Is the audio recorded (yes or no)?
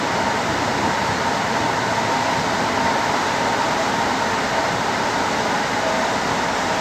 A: yes